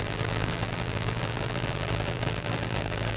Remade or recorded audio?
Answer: remade